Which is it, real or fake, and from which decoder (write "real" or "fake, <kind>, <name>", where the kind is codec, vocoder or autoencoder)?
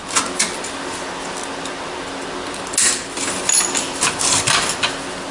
real